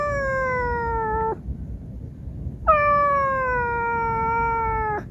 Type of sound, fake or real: real